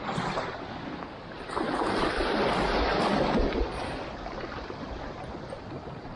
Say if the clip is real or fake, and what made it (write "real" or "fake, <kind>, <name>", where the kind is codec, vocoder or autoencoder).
real